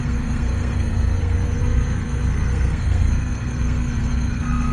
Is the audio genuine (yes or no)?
no